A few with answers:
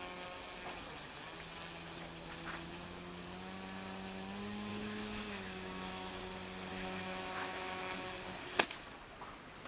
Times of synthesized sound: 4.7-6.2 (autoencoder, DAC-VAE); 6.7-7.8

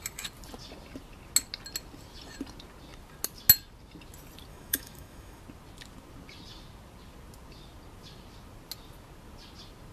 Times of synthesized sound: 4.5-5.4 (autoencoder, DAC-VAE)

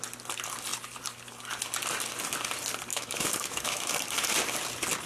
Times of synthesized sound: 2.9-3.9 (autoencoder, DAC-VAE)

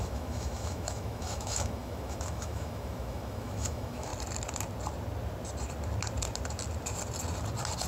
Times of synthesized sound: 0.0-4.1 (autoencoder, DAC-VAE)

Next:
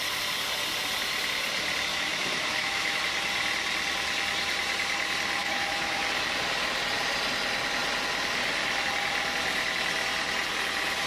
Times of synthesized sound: 1.9-3.0 (autoencoder, DAC-VAE); 5.4-6.0